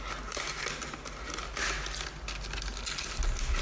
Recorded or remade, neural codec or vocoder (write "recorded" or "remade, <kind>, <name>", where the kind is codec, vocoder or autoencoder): recorded